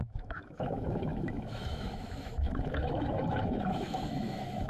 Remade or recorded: remade